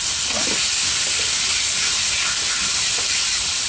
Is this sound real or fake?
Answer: real